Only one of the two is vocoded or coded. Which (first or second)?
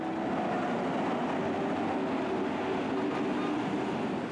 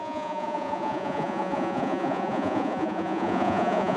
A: second